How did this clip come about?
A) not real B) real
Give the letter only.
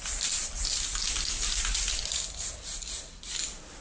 B